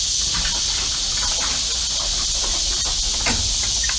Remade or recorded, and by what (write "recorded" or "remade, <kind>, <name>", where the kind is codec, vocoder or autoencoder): recorded